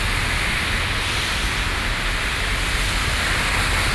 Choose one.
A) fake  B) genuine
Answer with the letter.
B